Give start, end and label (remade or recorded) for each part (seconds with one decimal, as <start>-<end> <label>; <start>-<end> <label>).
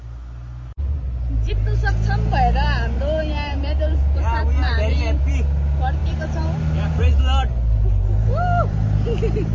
0.0-0.7 recorded; 0.7-1.5 remade; 1.5-3.2 recorded; 3.2-5.3 remade; 5.3-6.0 recorded; 6.0-7.2 remade; 7.2-9.5 recorded